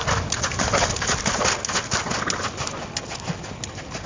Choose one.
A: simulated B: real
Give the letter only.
B